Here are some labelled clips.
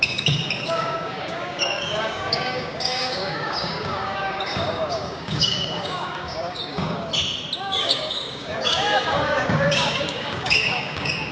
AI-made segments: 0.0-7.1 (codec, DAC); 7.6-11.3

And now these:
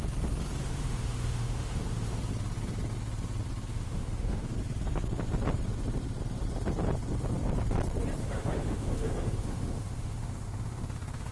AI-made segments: 0.6-2.2 (autoencoder, DAC-VAE); 3.7-4.5; 8.2-11.3

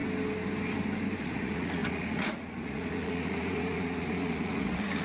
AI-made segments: 1.2-5.0 (vocoder, Vocos)

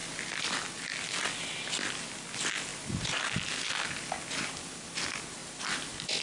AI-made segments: 0.0-1.7 (vocoder, BigVGAN v2); 2.7-3.5; 5.4-6.2

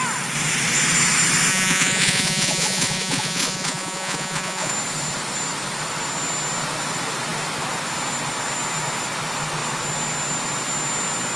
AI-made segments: 1.5-4.7 (vocoder, Vocos)

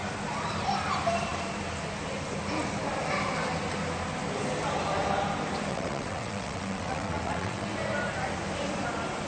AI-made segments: 5.7-7.7 (vocoder, WaveNeXt)